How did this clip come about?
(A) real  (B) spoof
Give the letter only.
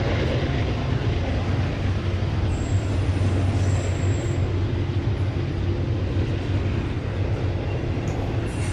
A